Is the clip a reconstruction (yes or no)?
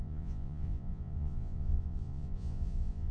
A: yes